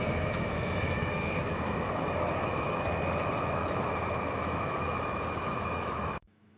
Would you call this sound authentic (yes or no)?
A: no